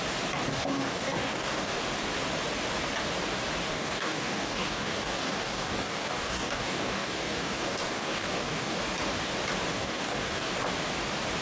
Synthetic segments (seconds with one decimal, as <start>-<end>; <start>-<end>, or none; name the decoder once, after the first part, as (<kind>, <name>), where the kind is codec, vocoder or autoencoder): 0.5-1.8 (codec, DAC); 3.7-8.8; 9.7-10.5